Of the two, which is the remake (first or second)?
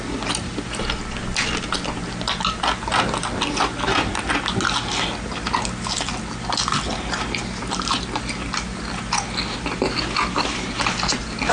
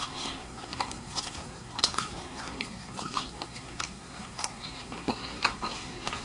second